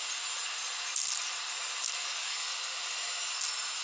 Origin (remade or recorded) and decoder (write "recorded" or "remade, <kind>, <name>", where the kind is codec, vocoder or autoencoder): recorded